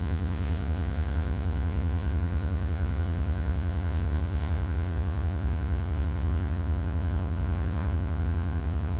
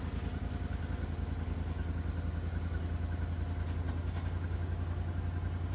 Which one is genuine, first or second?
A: second